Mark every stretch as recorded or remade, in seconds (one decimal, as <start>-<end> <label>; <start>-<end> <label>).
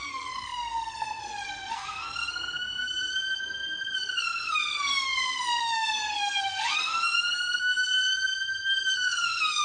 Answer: 0.0-9.6 remade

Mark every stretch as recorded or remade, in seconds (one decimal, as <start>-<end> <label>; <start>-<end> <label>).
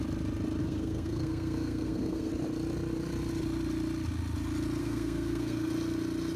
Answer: 0.0-0.6 recorded; 0.6-2.3 remade; 2.3-4.8 recorded; 4.8-5.7 remade; 5.7-6.4 recorded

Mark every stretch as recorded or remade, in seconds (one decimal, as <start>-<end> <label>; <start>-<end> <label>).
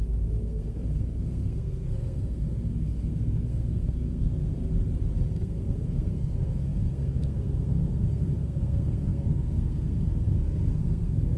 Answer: 0.0-4.6 remade; 4.6-5.3 recorded; 5.3-11.4 remade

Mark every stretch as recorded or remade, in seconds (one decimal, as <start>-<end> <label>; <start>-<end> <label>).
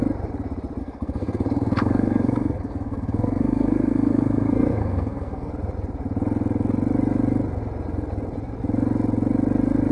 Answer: 0.0-0.8 recorded; 0.8-5.5 remade; 5.5-9.9 recorded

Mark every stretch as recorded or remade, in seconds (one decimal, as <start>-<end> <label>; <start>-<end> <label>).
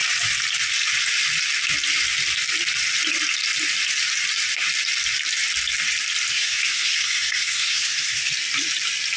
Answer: 0.0-6.3 recorded; 6.3-8.3 remade; 8.3-9.2 recorded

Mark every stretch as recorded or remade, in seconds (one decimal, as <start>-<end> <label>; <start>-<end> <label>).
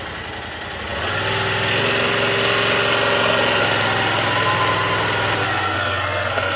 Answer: 0.0-5.4 recorded; 5.4-6.6 remade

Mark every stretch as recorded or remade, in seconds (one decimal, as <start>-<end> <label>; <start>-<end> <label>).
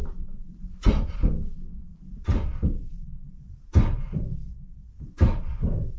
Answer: 0.0-6.0 recorded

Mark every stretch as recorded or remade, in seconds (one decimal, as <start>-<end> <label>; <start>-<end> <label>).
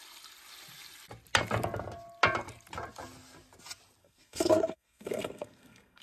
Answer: 0.0-4.0 recorded; 4.0-6.0 remade